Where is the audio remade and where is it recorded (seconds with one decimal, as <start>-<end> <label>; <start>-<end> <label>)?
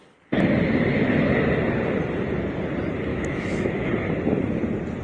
0.0-3.1 recorded; 3.1-3.9 remade; 3.9-5.0 recorded